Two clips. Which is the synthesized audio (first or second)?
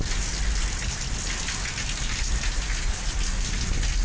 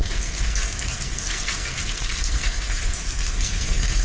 second